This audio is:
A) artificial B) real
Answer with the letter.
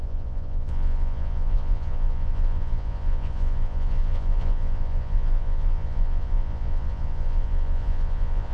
A